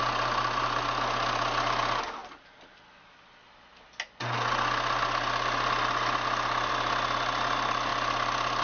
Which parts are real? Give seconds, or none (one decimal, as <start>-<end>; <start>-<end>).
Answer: 0.0-8.6